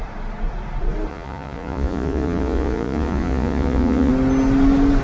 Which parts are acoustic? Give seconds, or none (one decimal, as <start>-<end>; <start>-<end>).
0.0-1.1; 4.1-5.0